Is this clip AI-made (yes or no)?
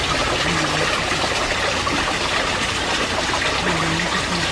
no